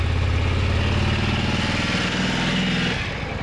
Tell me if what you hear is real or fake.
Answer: real